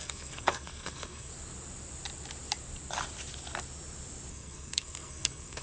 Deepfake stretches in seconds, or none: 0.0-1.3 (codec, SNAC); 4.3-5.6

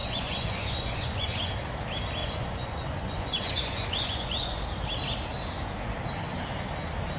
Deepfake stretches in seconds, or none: 0.0-1.5 (vocoder, Vocos); 2.2-4.6

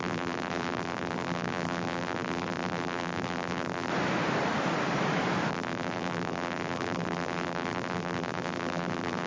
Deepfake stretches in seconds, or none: 0.0-3.9 (vocoder, BigVGAN v2); 5.5-9.3

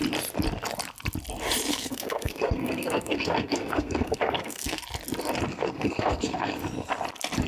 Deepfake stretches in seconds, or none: 1.7-4.8 (codec, SNAC); 5.5-6.6

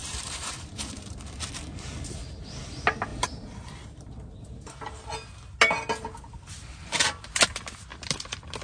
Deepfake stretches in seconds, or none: 0.0-1.5 (vocoder, BigVGAN v2); 7.9-8.6

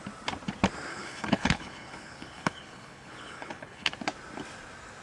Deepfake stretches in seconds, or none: 0.9-3.9 (codec, HILCodec)